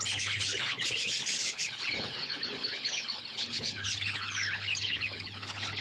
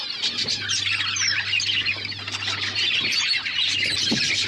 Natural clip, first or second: second